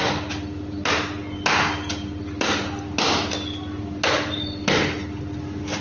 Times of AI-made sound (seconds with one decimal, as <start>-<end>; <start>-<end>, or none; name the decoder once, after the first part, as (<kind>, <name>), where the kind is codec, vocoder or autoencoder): none